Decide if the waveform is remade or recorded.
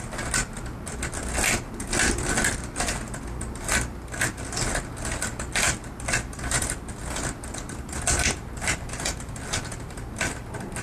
recorded